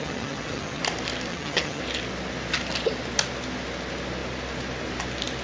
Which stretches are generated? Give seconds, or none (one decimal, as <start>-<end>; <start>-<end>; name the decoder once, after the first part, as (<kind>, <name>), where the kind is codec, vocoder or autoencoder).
0.0-0.8 (vocoder, HiFi-GAN); 1.3-1.8